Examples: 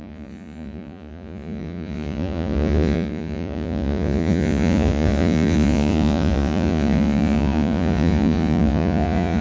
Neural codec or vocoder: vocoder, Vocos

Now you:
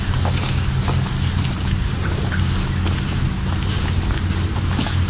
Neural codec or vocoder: none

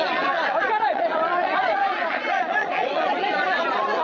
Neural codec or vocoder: vocoder, Vocos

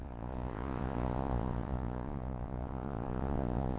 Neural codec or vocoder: vocoder, Vocos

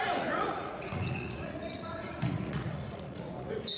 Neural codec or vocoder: vocoder, Vocos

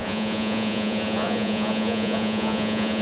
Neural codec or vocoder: vocoder, Vocos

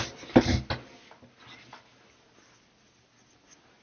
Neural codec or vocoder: none